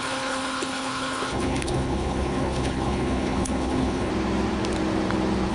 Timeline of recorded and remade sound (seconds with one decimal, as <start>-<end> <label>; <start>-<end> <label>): 0.0-4.1 remade; 4.1-5.5 recorded